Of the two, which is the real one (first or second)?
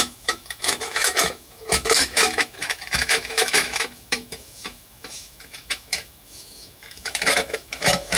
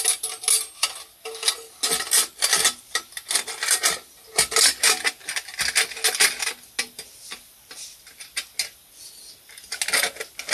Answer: second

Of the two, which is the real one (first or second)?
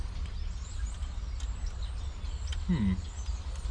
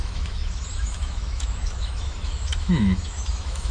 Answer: first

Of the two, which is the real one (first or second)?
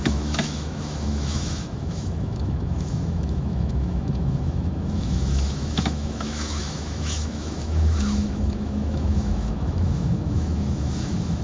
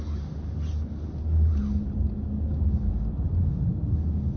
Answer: second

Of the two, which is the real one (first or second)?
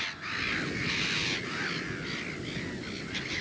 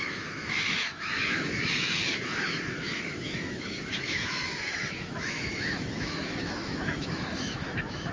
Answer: first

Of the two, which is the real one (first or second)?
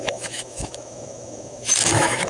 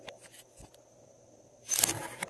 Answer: second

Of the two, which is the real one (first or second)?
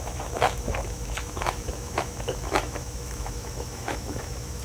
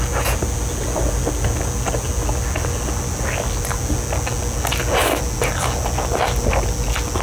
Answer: second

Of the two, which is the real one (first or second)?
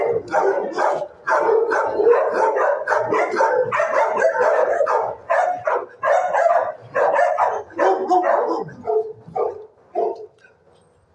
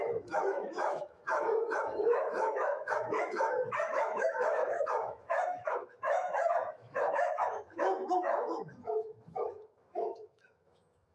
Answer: first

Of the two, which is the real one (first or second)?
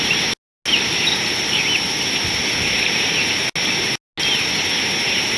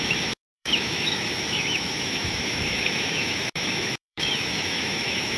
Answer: first